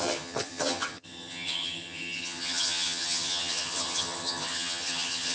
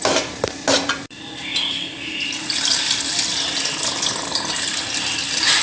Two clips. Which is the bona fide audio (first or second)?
second